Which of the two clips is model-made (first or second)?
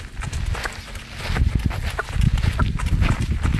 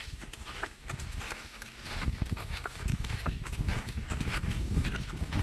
second